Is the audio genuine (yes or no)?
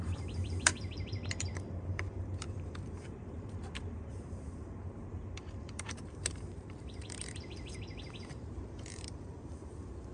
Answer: no